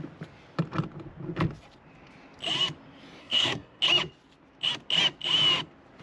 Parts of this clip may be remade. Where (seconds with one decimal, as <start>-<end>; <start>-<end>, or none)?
3.2-3.8